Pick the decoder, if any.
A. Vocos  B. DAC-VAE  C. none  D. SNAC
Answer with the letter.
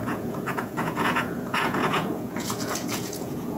A